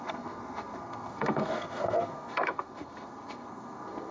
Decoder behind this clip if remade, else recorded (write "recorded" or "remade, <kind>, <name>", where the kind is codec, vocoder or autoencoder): remade, codec, SNAC